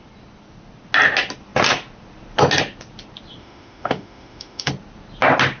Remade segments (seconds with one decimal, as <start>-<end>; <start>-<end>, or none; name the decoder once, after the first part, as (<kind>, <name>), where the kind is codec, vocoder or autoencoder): 3.4-4.7 (autoencoder, DAC-VAE)